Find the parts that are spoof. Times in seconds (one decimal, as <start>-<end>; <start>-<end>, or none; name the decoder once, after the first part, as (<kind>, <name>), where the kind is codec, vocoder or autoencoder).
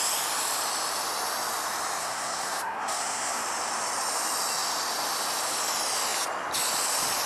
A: 2.0-3.4 (codec, SNAC)